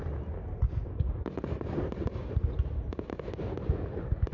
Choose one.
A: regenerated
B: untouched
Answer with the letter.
B